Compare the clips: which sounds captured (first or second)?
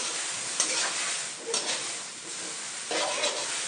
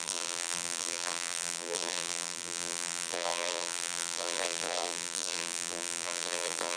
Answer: first